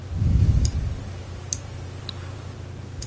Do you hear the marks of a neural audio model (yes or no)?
yes